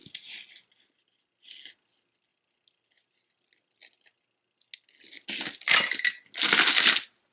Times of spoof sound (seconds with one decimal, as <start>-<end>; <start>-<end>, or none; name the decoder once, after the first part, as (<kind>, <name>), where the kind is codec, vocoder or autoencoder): none